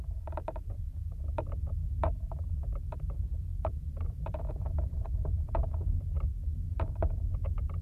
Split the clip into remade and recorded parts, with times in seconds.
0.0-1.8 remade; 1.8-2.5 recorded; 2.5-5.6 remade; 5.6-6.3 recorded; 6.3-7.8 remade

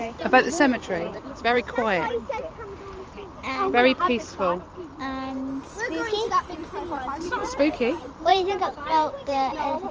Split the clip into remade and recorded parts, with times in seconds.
0.0-2.4 remade; 2.4-6.4 recorded; 6.4-7.4 remade; 7.4-7.9 recorded; 7.9-9.9 remade

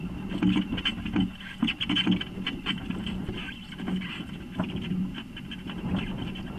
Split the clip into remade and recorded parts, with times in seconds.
0.0-6.6 recorded

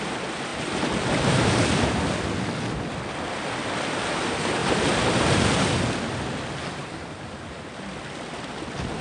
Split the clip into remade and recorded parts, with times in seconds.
0.0-0.5 recorded; 0.5-1.9 remade; 1.9-4.6 recorded; 4.6-5.7 remade; 5.7-6.8 recorded; 6.8-7.9 remade; 7.9-9.0 recorded

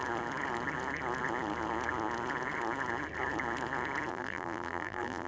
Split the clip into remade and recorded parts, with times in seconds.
0.0-4.1 recorded; 4.1-5.3 remade

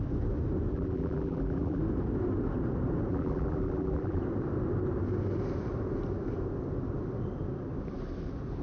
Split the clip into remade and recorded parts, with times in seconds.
0.0-0.7 recorded; 0.7-1.8 remade; 1.8-3.1 recorded; 3.1-4.2 remade; 4.2-8.6 recorded

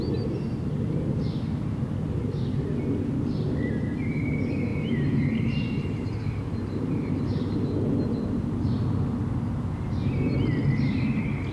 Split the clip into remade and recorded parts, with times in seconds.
0.0-4.7 recorded; 4.7-7.2 remade; 7.2-11.5 recorded

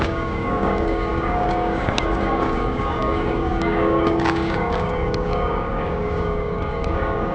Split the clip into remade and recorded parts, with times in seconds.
0.0-7.3 remade